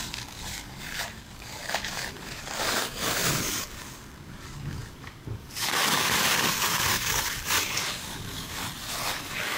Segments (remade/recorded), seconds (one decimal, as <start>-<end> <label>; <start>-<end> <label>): 0.0-8.6 remade; 8.6-9.1 recorded; 9.1-9.6 remade